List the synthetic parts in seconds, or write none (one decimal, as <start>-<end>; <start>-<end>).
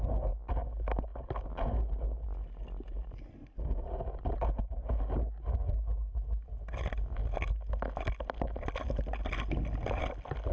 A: none